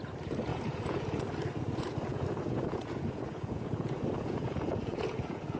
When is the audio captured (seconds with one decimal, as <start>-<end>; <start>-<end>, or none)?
0.0-0.5; 1.2-2.1